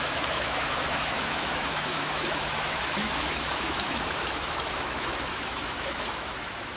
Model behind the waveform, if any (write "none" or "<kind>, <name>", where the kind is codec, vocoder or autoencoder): autoencoder, DAC-VAE